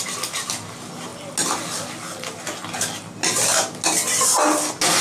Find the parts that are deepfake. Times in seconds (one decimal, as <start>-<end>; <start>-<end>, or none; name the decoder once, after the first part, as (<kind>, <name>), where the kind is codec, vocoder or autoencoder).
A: none